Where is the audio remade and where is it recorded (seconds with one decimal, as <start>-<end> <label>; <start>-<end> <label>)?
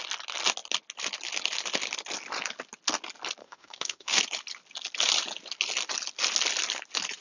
0.0-3.4 recorded; 3.4-4.2 remade; 4.2-7.2 recorded